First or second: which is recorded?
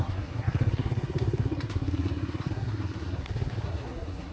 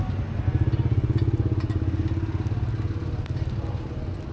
second